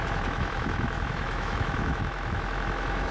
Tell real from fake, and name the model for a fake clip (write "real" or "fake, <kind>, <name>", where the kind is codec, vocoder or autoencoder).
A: fake, autoencoder, DAC-VAE